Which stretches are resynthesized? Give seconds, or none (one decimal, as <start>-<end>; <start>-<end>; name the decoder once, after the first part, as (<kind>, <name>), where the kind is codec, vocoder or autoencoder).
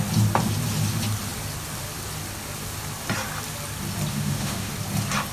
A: 4.1-4.7 (autoencoder, DAC-VAE)